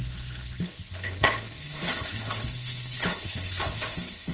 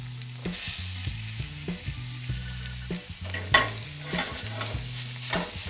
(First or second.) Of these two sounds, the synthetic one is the first